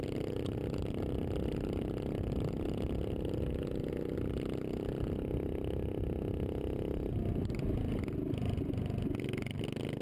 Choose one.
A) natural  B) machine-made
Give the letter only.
A